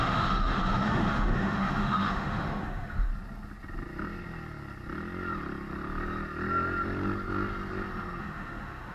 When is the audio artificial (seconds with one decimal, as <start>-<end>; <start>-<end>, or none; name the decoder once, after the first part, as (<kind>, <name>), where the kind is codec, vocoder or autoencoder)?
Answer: 0.0-3.1 (autoencoder, DAC-VAE); 8.2-8.9